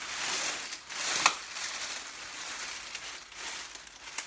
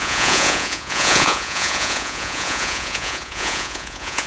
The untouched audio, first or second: first